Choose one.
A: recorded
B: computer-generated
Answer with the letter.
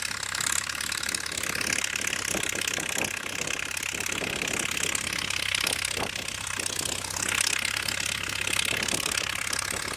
A